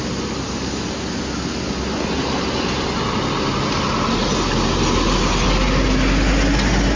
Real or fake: real